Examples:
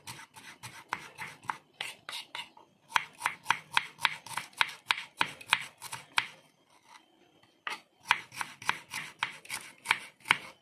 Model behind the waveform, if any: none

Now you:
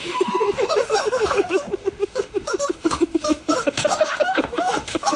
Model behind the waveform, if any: autoencoder, DAC-VAE